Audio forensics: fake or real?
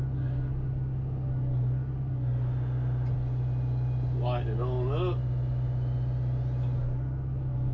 real